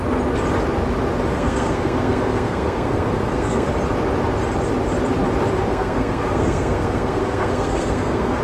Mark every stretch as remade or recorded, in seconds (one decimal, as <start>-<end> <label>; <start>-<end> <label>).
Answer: 0.0-1.3 recorded; 1.3-3.7 remade; 3.7-5.7 recorded; 5.7-8.4 remade